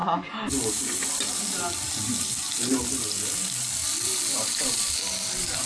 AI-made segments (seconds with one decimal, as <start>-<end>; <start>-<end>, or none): none